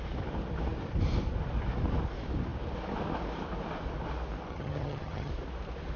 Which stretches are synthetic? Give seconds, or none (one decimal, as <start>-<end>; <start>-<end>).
4.5-5.3

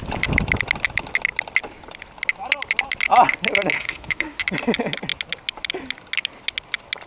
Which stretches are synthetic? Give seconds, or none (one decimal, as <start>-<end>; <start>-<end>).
3.7-4.4